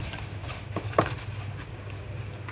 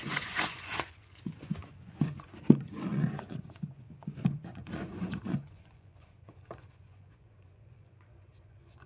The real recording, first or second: first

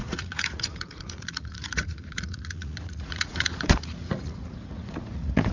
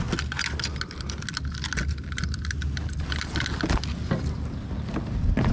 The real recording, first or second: second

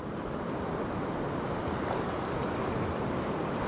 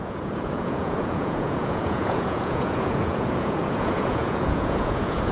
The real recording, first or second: first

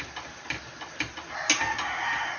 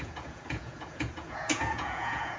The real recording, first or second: first